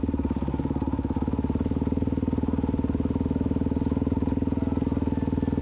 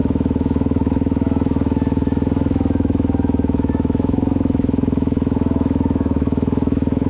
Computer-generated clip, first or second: second